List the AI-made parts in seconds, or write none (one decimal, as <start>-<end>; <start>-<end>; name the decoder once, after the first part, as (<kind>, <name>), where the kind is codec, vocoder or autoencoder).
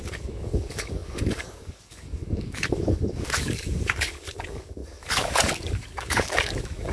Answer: 0.0-6.9 (codec, DAC)